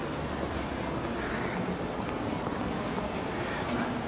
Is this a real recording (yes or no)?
yes